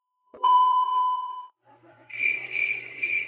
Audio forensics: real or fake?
fake